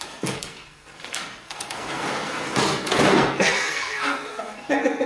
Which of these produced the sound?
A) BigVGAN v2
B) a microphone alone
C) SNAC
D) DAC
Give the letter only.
C